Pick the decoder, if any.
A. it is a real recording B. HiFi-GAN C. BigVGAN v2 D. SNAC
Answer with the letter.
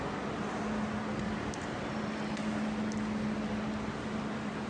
A